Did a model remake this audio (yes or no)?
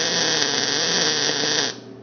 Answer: no